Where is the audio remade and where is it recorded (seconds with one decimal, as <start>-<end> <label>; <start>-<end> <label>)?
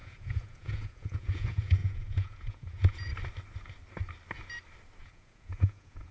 0.0-3.1 remade; 3.1-5.0 recorded; 5.0-6.1 remade